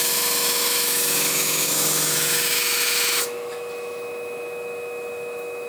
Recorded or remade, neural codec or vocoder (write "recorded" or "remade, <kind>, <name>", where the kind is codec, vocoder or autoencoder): remade, autoencoder, DAC-VAE